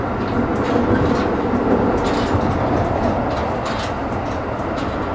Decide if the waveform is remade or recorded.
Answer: recorded